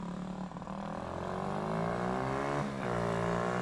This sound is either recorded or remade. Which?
recorded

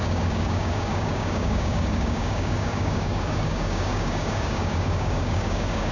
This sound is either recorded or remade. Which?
remade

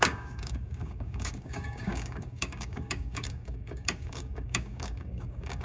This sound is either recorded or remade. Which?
remade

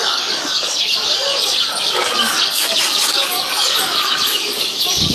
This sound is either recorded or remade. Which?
remade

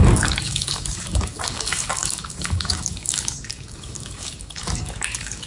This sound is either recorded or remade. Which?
remade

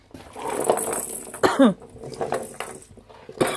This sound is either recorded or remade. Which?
recorded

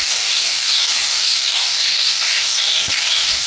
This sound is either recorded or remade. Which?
remade